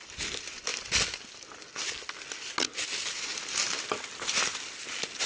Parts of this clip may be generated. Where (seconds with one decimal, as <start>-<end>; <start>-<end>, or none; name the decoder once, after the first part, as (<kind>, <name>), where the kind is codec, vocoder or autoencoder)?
none